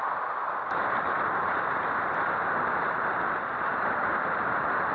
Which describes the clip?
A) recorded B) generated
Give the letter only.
A